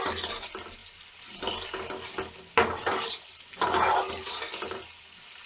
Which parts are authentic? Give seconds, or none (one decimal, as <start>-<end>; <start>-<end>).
0.0-5.5